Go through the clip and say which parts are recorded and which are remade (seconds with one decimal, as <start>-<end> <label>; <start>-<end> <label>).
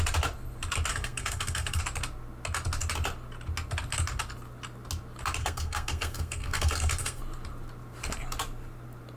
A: 0.0-0.9 recorded; 0.9-1.8 remade; 1.8-5.4 recorded; 5.4-7.2 remade; 7.2-9.2 recorded